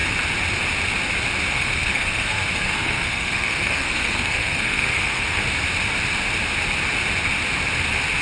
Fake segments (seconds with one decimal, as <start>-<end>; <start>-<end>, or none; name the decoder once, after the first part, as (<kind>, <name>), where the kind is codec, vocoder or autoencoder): 1.5-5.4 (codec, SNAC)